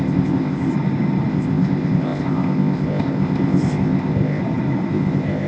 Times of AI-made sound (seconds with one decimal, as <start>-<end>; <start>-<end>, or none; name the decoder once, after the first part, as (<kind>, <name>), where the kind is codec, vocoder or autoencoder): 0.0-0.7 (codec, ZipCodec); 1.3-4.4; 4.9-5.5